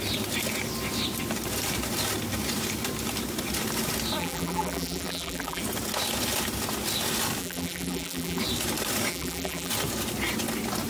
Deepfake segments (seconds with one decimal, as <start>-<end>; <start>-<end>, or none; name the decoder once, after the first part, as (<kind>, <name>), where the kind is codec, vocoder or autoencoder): 4.2-5.6 (vocoder, BigVGAN v2); 7.4-8.4; 9.1-9.7